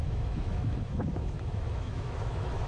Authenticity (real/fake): fake